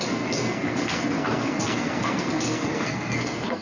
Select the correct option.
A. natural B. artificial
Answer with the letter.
B